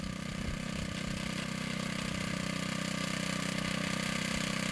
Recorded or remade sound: recorded